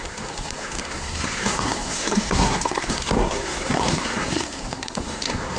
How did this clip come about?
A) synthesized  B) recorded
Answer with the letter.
A